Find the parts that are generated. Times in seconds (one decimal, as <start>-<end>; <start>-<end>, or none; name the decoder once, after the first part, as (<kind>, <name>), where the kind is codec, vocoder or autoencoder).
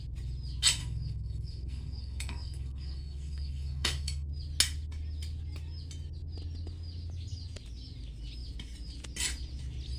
0.8-4.3 (codec, SNAC)